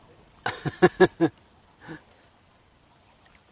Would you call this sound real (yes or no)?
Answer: yes